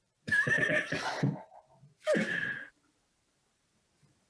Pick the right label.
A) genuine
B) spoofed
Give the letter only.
B